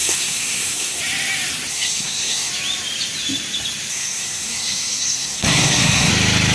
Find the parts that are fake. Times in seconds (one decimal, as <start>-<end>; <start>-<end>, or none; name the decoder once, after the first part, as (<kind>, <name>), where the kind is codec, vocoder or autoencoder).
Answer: 0.0-1.0 (codec, SNAC); 1.7-2.5; 3.9-6.1